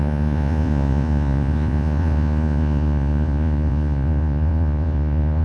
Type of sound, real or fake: fake